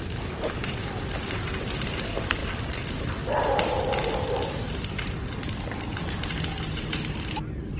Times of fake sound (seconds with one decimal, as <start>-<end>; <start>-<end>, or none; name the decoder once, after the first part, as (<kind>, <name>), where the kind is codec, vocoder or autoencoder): 0.0-7.8 (vocoder, BigVGAN v2)